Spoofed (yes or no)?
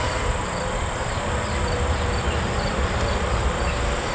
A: no